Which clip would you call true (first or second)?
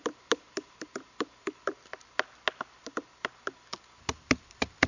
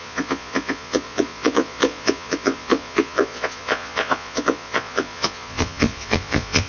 first